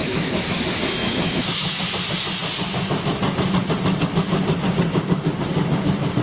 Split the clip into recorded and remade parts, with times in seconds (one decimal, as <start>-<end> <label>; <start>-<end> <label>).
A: 0.0-0.6 remade; 0.6-1.0 recorded; 1.0-1.8 remade; 1.8-6.2 recorded